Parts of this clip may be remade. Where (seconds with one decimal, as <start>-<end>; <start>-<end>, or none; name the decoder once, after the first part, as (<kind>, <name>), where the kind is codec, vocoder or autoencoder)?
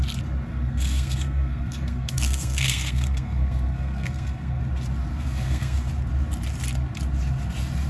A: 0.5-4.6 (codec, SNAC); 5.1-5.9